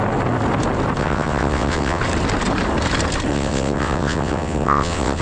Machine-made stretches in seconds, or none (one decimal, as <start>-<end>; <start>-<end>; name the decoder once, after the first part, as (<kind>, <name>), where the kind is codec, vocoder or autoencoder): 1.0-2.0 (vocoder, WaveNeXt); 3.3-5.2